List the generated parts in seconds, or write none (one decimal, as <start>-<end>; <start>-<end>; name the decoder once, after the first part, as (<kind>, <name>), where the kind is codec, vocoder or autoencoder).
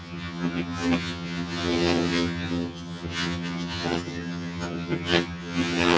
0.0-6.0 (vocoder, HiFi-GAN)